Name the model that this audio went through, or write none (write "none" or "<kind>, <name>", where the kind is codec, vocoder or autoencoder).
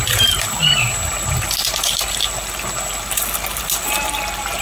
none